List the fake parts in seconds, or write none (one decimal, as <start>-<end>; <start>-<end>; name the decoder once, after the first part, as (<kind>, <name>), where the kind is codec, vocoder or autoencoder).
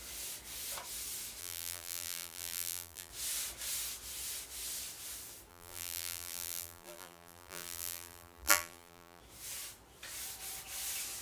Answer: 1.4-3.1 (vocoder, BigVGAN v2); 5.5-9.2